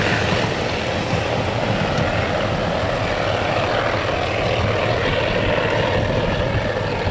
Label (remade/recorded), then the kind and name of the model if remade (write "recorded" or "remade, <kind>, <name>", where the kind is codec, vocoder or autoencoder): recorded